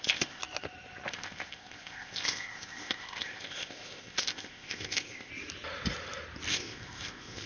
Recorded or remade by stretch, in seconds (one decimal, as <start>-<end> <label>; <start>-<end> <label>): 0.0-0.4 remade; 0.4-1.1 recorded; 1.1-5.3 remade; 5.3-6.5 recorded; 6.5-7.5 remade